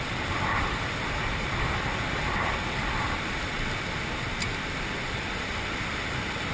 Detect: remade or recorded remade